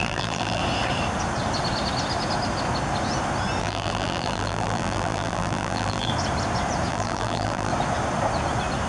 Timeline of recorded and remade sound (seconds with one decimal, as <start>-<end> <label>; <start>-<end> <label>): 0.0-0.6 remade; 0.6-3.6 recorded; 3.6-6.1 remade; 6.1-6.9 recorded; 6.9-7.7 remade; 7.7-8.9 recorded

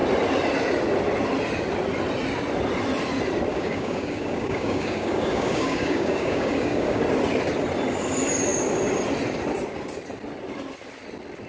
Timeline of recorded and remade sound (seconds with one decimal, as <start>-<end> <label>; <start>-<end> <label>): 0.0-3.5 recorded; 3.5-7.0 remade; 7.0-11.5 recorded

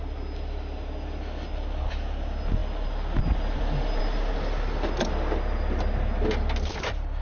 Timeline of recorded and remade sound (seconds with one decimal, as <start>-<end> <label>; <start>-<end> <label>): 0.0-7.2 recorded